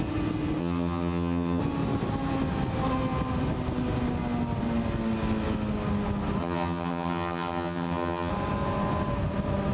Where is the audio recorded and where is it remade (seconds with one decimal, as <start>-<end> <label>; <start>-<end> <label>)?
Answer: 0.0-0.6 recorded; 0.6-1.6 remade; 1.6-6.4 recorded; 6.4-8.3 remade; 8.3-9.7 recorded